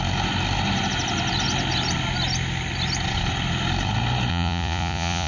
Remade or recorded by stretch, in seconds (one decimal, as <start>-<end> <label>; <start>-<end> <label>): 0.0-4.3 recorded; 4.3-5.3 remade